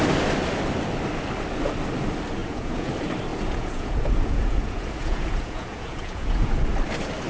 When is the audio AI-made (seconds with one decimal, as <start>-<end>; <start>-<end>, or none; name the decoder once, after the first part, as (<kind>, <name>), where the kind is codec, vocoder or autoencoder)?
2.4-2.9 (vocoder, Vocos); 3.3-6.5